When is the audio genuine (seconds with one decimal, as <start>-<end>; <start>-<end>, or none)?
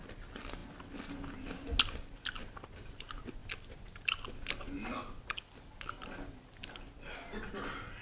0.0-8.0